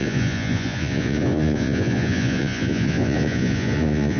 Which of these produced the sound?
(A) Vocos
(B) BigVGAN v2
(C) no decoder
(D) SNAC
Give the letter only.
A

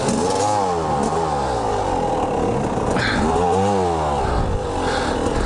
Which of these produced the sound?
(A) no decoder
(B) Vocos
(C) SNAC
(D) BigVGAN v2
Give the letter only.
A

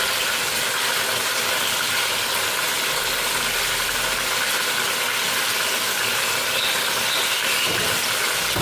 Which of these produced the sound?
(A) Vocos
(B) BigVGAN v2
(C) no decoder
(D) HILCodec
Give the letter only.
C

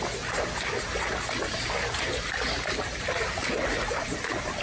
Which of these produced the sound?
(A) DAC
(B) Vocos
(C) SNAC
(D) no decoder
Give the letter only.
D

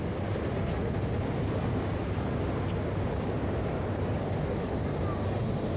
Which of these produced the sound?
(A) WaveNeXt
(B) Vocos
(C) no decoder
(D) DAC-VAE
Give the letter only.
C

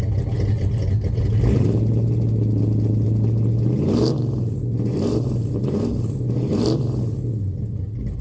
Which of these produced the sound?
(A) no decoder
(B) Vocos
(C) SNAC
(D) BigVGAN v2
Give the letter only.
A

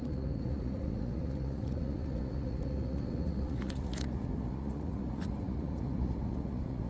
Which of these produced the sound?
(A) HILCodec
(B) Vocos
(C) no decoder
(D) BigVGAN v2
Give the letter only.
B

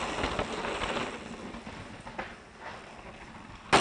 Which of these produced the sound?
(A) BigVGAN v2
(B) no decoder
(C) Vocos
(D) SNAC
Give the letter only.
B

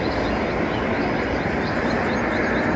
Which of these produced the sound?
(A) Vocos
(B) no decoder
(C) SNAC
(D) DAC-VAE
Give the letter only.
B